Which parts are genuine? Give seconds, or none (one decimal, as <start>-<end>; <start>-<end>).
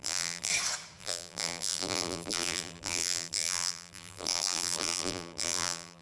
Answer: 0.5-1.0